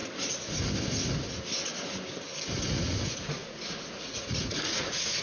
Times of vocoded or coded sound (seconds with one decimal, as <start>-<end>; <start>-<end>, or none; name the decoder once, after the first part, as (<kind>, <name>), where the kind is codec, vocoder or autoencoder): 2.7-5.2 (vocoder, Vocos)